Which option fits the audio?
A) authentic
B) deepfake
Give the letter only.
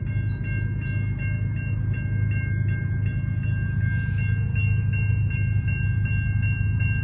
A